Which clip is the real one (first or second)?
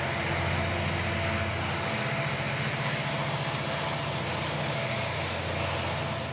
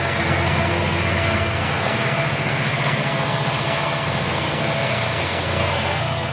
first